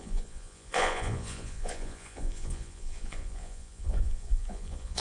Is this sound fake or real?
fake